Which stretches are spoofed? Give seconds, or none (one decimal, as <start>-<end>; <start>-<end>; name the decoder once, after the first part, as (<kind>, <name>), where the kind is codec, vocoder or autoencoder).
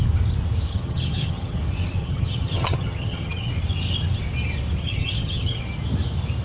0.7-1.6 (vocoder, HiFi-GAN); 2.0-3.5; 4.8-5.6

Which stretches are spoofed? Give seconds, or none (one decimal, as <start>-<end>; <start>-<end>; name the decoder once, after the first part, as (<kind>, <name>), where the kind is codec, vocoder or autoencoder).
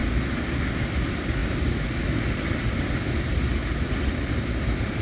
none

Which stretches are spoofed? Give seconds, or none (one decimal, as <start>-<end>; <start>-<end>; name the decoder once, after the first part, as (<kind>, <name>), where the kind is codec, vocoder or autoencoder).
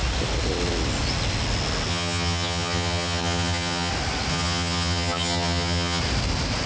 1.9-3.9 (vocoder, HiFi-GAN); 4.3-6.0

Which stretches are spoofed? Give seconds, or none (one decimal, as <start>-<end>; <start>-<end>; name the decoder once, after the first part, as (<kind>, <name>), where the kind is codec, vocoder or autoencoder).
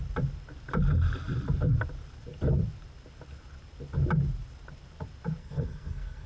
5.4-6.3 (codec, SNAC)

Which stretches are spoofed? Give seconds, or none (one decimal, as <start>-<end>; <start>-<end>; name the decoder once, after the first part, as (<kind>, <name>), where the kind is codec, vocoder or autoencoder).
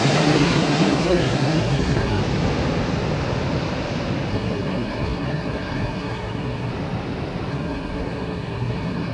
0.0-2.2 (codec, SNAC); 4.3-6.7; 7.5-9.1